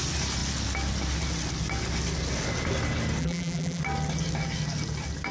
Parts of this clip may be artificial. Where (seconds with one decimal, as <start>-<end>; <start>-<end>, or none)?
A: 3.2-3.8